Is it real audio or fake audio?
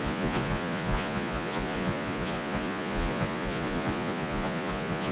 fake